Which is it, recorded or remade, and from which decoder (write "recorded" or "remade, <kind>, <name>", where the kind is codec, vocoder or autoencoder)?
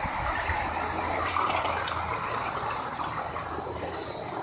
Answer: recorded